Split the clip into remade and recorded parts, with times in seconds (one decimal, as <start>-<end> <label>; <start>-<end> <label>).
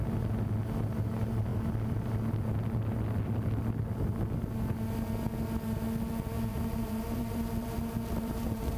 0.0-6.5 recorded; 6.5-8.8 remade